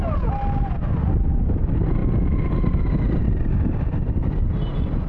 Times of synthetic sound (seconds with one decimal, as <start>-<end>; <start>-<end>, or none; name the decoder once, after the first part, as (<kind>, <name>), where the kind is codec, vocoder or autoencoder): none